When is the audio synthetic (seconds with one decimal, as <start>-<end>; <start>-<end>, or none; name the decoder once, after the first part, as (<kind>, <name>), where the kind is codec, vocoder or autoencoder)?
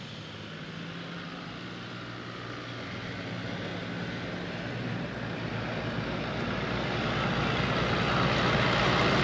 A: none